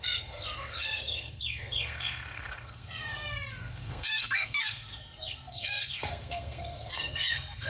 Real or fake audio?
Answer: fake